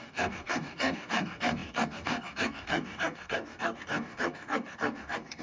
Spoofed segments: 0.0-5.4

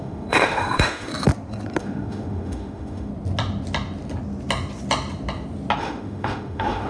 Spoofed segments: 0.0-1.1; 1.8-3.1; 5.8-6.9

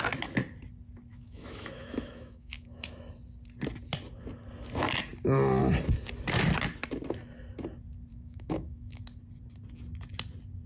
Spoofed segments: 1.1-2.9; 8.1-9.0